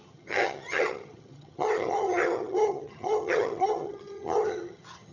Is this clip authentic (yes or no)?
no